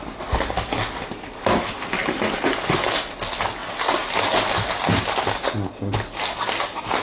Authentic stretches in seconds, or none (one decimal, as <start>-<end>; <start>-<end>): 0.0-7.0